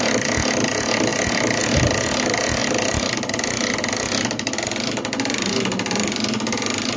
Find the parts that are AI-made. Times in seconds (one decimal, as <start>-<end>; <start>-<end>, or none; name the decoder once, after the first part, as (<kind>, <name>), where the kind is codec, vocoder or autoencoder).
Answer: none